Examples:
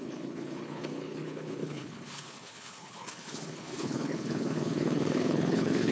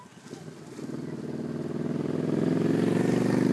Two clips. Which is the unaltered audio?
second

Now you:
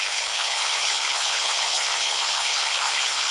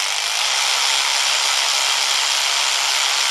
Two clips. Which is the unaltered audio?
second